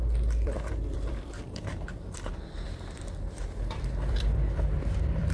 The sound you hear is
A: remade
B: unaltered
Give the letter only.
A